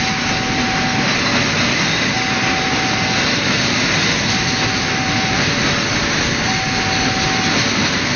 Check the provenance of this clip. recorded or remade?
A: recorded